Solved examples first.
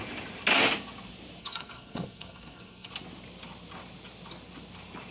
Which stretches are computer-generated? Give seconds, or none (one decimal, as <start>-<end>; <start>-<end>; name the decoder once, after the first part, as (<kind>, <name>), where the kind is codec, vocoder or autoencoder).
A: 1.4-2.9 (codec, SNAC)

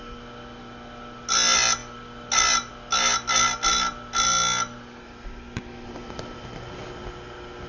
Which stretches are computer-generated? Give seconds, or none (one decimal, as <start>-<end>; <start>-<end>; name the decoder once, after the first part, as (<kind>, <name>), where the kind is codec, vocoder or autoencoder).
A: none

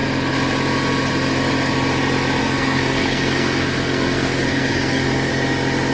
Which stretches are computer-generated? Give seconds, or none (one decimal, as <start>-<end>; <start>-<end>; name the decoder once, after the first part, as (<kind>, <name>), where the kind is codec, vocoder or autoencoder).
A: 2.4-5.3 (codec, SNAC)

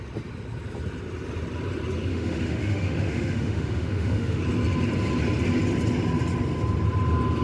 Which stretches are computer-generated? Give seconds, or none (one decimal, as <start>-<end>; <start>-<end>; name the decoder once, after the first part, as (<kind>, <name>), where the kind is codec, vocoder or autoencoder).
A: 2.1-4.4 (autoencoder, DAC-VAE)

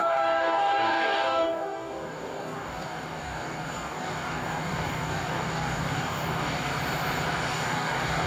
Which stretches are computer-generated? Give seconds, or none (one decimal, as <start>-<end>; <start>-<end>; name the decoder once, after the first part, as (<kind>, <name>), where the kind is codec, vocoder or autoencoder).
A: 0.0-6.7 (codec, DAC); 7.5-8.3